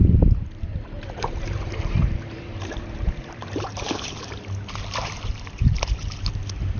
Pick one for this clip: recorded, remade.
remade